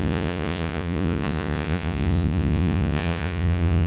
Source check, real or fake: fake